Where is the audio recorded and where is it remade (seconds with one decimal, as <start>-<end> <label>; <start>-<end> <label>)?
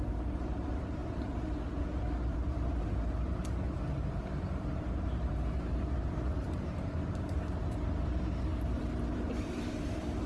0.0-10.3 remade